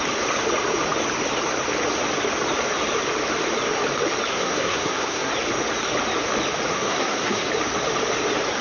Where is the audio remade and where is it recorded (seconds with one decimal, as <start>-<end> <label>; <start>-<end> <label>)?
0.0-4.3 recorded; 4.3-5.3 remade; 5.3-6.7 recorded; 6.7-7.5 remade; 7.5-8.6 recorded